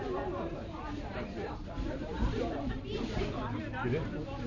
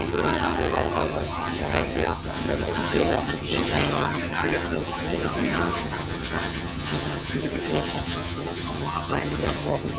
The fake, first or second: second